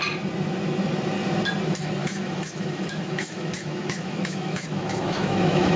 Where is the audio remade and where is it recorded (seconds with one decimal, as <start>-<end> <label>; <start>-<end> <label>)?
0.0-2.0 recorded; 2.0-5.8 remade